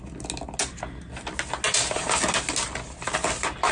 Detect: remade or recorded recorded